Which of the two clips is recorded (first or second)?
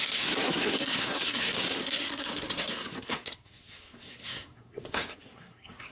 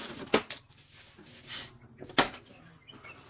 second